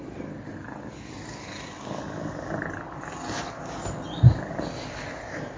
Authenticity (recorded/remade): recorded